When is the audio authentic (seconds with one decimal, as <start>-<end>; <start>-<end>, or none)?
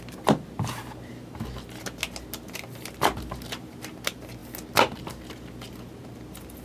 0.0-6.6